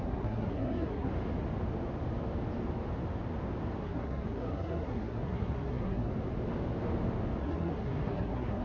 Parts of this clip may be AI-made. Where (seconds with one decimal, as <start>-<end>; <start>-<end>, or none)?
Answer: 0.0-1.1; 3.8-6.1; 7.4-8.6